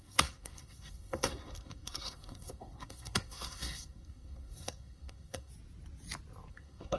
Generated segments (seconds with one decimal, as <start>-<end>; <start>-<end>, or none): 0.0-5.5; 6.5-7.0